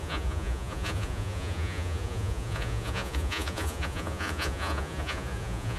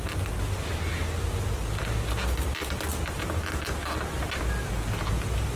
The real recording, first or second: second